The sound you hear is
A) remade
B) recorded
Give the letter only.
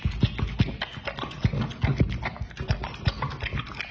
B